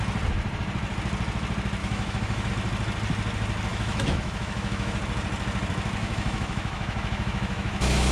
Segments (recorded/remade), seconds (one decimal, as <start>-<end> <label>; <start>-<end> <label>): 0.0-1.8 recorded; 1.8-2.5 remade; 2.5-3.7 recorded; 3.7-5.0 remade; 5.0-6.0 recorded; 6.0-8.1 remade